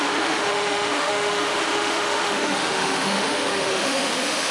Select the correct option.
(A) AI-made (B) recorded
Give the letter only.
A